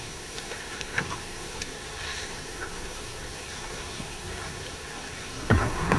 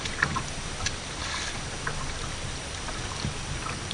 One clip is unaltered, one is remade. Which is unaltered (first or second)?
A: second